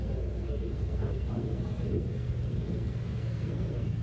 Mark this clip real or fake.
fake